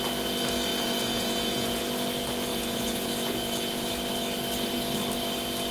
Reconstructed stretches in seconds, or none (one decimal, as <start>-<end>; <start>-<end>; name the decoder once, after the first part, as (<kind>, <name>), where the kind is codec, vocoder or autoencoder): 0.7-1.8 (vocoder, Vocos); 2.5-3.9